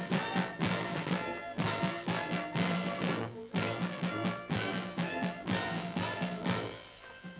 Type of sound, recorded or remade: remade